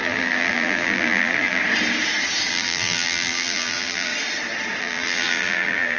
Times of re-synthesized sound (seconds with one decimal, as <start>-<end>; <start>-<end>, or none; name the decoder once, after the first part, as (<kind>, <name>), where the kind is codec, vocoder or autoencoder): 0.0-1.6 (vocoder, BigVGAN v2); 2.5-4.1; 4.8-6.0